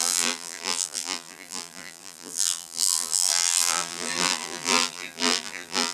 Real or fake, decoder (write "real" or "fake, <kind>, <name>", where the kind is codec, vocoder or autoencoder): fake, vocoder, BigVGAN v2